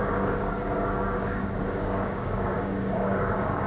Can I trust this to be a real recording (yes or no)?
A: no